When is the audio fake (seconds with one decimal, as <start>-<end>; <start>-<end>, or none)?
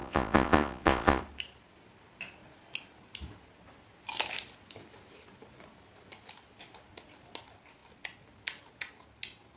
0.0-1.2